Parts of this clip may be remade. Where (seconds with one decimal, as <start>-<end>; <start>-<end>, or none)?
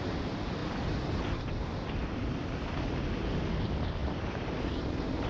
0.6-2.7; 4.0-5.3